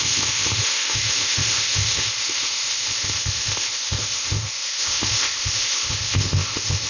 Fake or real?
fake